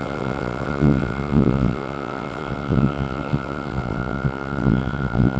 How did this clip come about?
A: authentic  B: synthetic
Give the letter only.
B